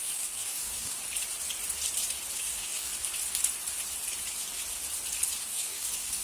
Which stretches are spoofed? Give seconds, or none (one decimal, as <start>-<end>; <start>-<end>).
0.0-1.0; 2.4-2.9; 5.4-6.2